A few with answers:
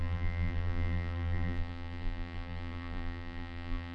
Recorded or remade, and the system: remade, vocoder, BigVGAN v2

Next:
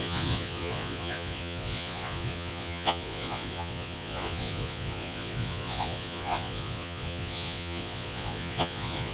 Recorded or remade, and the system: remade, vocoder, Vocos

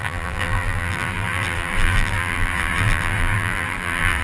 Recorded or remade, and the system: remade, vocoder, BigVGAN v2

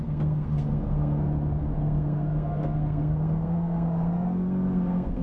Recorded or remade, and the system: remade, codec, SNAC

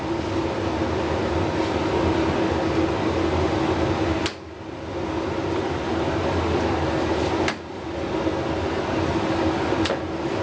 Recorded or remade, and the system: recorded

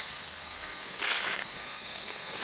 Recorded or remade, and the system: remade, codec, SNAC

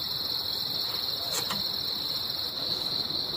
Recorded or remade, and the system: recorded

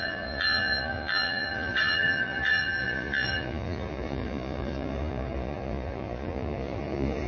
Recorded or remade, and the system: remade, vocoder, Vocos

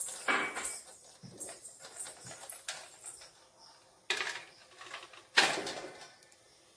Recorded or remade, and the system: recorded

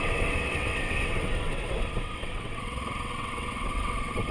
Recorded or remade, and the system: remade, vocoder, WaveNeXt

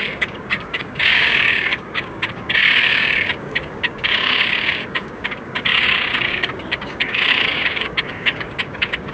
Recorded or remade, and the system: remade, codec, DAC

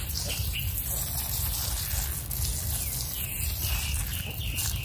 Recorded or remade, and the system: recorded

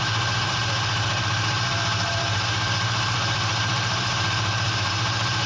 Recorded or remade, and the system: remade, vocoder, BigVGAN v2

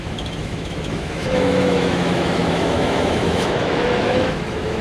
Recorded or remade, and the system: remade, autoencoder, DAC-VAE